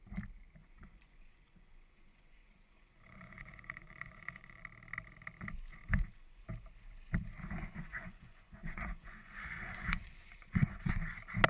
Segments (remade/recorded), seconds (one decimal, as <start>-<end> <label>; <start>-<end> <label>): 0.0-0.6 recorded; 0.6-4.6 remade; 4.6-5.7 recorded; 5.7-6.4 remade; 6.4-7.4 recorded; 7.4-10.9 remade; 10.9-11.5 recorded